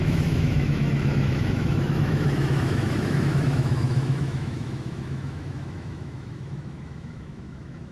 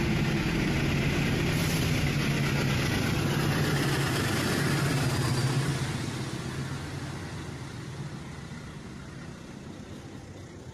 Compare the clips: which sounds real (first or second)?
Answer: second